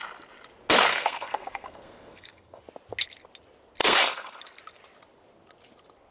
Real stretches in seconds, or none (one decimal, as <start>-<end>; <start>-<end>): 0.0-0.9; 2.6-3.8; 4.4-6.1